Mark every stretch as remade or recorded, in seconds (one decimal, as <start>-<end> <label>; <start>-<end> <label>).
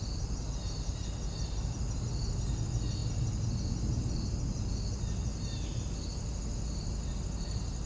0.0-7.9 recorded